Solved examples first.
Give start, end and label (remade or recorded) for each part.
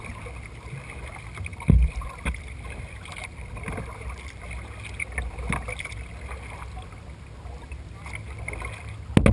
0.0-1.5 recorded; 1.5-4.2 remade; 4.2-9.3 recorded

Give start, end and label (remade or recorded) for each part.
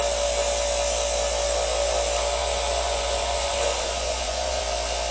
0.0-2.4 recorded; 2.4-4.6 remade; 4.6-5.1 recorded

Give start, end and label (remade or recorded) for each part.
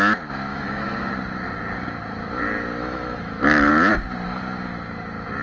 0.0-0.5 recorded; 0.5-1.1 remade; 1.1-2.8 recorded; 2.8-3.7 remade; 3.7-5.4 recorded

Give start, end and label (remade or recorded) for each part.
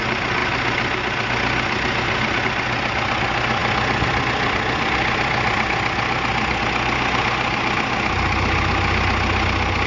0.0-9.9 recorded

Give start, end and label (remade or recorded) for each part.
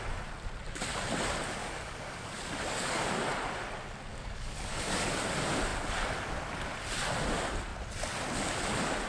0.0-1.6 recorded; 1.6-3.1 remade; 3.1-4.1 recorded; 4.1-5.2 remade; 5.2-9.1 recorded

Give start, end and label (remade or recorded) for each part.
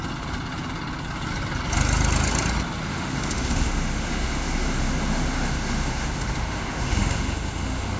0.0-2.9 recorded; 2.9-8.0 remade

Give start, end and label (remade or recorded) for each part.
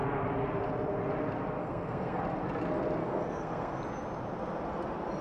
0.0-1.6 recorded; 1.6-2.2 remade; 2.2-3.0 recorded; 3.0-3.8 remade; 3.8-5.2 recorded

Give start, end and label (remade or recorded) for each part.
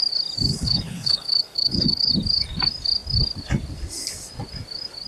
0.0-0.5 recorded; 0.5-2.1 remade; 2.1-5.1 recorded